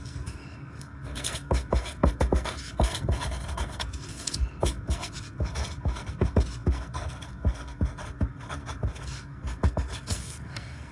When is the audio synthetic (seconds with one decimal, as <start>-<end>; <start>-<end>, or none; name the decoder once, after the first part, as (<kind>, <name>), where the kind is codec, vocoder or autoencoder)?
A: 0.0-10.9 (codec, SNAC)